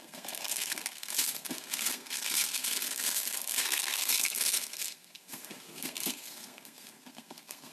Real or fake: fake